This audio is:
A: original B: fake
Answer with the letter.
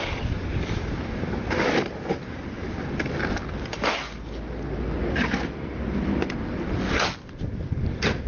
A